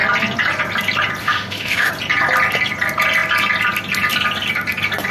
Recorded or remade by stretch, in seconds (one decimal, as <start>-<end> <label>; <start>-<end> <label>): 0.0-1.2 recorded; 1.2-1.9 remade; 1.9-5.1 recorded